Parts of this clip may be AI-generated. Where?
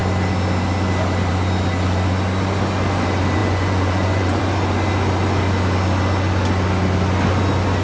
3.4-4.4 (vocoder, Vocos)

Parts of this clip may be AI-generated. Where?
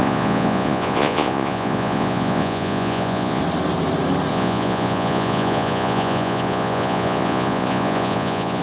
0.0-3.4 (vocoder, Vocos); 4.3-8.6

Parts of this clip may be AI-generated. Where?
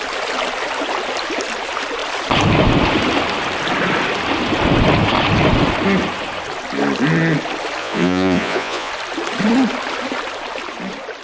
7.8-8.9 (vocoder, Vocos)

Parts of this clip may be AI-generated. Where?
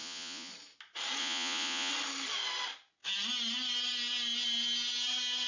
0.0-0.5 (vocoder, Vocos); 1.2-1.9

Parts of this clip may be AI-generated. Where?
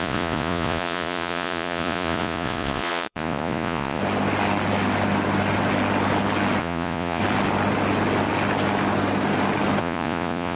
0.0-4.0 (vocoder, Vocos); 6.6-7.2; 9.8-10.6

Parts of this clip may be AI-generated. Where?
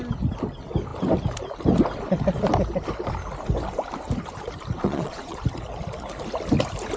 4.8-5.4 (vocoder, Vocos)